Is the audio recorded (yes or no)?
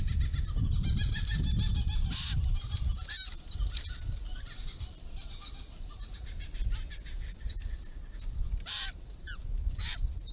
yes